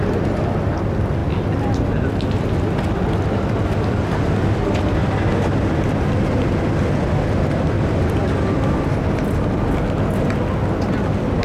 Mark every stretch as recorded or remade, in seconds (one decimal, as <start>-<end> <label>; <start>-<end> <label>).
0.0-11.4 recorded